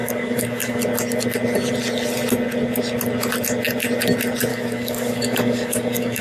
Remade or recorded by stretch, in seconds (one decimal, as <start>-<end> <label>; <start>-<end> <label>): 0.0-0.8 remade; 0.8-4.5 recorded; 4.5-6.2 remade